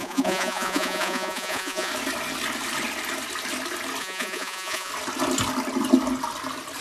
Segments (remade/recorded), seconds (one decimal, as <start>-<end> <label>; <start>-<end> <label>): 0.0-1.9 remade; 1.9-4.0 recorded; 4.0-4.9 remade; 4.9-6.8 recorded